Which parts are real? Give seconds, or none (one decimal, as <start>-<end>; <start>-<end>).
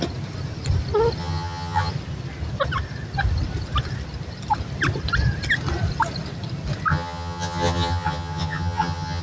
0.0-1.2; 1.9-6.9